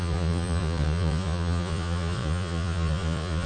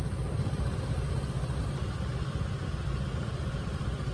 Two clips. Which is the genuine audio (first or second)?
second